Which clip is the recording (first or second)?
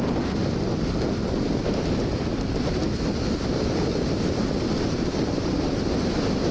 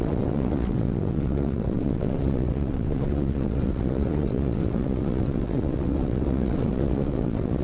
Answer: first